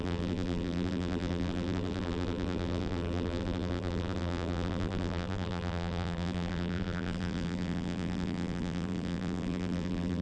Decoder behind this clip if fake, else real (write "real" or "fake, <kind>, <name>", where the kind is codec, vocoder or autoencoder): fake, vocoder, BigVGAN v2